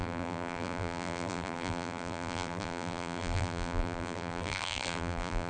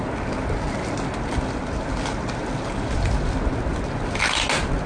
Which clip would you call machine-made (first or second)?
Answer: first